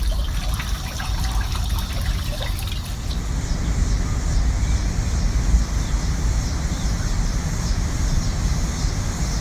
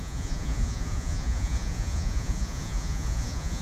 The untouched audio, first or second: first